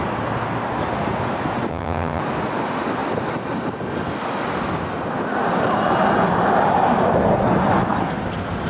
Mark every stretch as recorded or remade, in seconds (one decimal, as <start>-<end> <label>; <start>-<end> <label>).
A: 0.0-1.7 recorded; 1.7-2.2 remade; 2.2-8.7 recorded